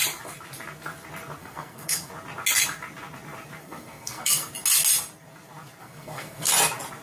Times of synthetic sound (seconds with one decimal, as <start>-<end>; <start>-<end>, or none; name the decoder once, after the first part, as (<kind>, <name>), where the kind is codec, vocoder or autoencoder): 1.4-2.1 (codec, SNAC); 3.6-4.5; 5.8-6.5